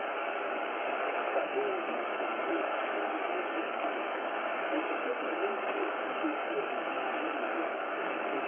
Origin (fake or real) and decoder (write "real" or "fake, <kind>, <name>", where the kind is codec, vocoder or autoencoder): fake, codec, DAC